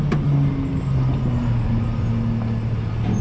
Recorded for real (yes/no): yes